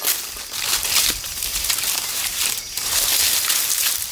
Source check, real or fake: real